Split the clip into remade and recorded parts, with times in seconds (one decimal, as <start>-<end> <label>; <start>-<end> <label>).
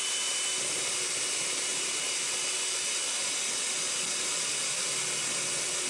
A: 0.0-5.9 recorded